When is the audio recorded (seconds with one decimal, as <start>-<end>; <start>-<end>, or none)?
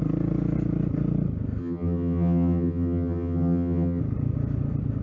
0.0-1.6; 4.0-5.0